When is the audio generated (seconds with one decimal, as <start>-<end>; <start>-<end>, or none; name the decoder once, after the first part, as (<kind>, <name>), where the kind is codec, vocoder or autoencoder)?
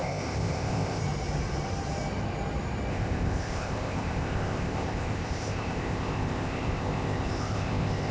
0.0-1.0 (codec, ZipCodec); 2.9-8.1